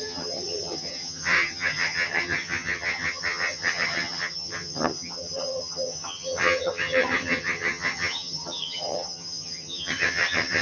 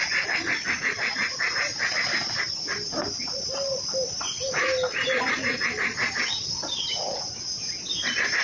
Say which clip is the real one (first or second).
second